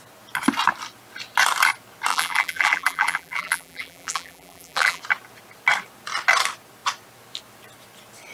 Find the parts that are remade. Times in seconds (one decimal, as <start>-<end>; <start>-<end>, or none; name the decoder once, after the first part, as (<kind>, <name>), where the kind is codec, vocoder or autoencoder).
2.1-5.0 (vocoder, BigVGAN v2)